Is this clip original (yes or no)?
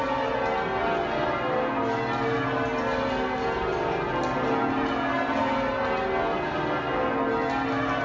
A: yes